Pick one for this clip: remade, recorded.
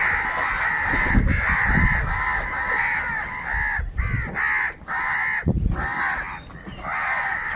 recorded